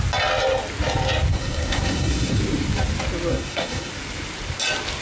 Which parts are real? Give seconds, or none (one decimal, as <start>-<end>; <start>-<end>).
0.0-1.3; 2.4-3.3; 3.9-5.0